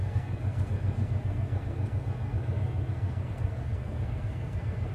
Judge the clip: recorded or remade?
remade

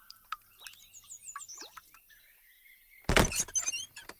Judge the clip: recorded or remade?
recorded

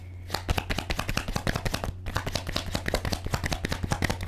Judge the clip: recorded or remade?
recorded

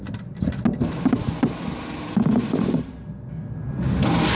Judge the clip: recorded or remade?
recorded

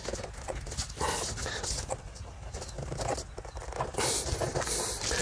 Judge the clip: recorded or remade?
recorded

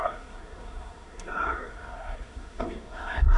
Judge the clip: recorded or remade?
remade